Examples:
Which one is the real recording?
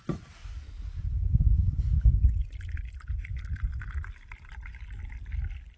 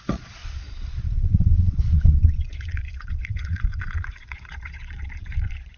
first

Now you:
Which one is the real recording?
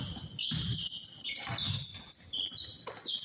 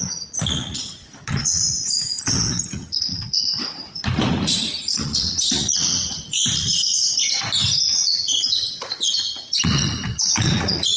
first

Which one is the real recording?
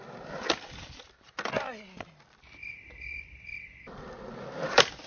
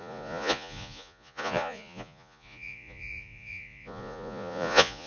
first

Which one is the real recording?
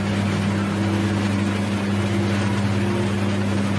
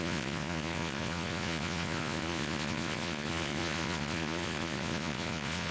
first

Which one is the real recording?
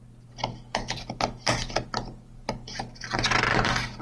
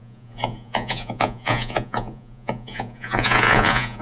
first